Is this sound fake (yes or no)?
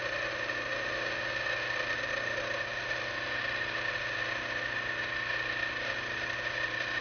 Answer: no